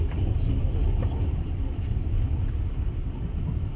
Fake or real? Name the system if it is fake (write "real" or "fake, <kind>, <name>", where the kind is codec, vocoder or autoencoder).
fake, vocoder, BigVGAN v2